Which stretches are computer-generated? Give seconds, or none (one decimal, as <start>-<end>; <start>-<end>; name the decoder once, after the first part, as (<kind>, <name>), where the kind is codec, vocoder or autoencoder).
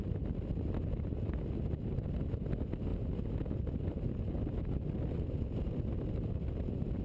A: none